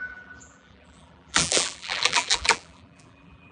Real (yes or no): no